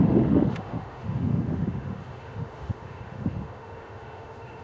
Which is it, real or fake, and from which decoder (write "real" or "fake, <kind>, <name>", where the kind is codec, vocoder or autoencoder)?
fake, autoencoder, DAC-VAE